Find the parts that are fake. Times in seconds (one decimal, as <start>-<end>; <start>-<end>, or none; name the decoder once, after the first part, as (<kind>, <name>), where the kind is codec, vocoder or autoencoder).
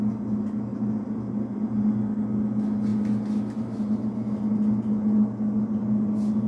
0.7-1.9 (vocoder, BigVGAN v2)